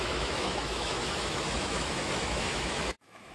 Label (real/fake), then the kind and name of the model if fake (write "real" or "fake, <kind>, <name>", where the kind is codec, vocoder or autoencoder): fake, autoencoder, DAC-VAE